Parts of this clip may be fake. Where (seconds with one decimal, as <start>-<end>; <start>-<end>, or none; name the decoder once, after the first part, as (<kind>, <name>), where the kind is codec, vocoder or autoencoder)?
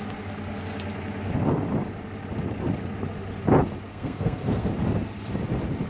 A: 3.9-4.7 (codec, SNAC)